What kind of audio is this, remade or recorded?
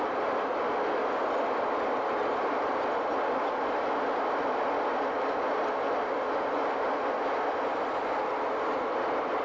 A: recorded